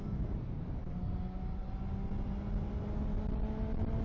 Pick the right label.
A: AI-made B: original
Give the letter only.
B